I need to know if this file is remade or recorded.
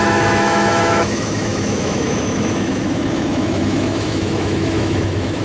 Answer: remade